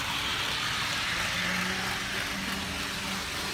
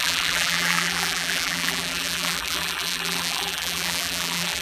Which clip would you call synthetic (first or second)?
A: second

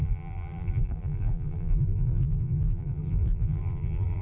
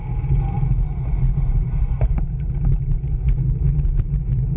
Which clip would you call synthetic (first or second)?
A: first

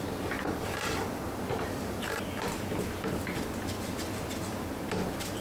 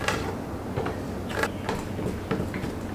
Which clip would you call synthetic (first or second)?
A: first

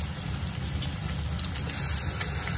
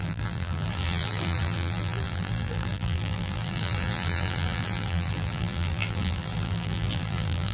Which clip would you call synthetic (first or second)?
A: second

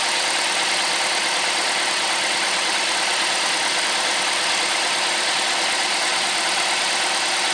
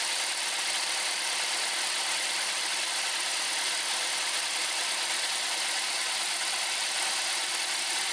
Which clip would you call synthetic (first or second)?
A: second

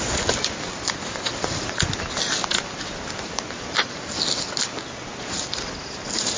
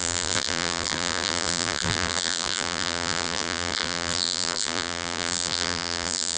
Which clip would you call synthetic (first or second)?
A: second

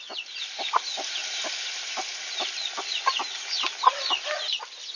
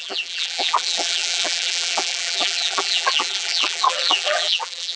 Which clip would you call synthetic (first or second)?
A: second